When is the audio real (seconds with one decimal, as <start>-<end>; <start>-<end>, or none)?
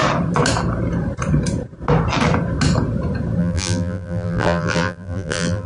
0.0-3.4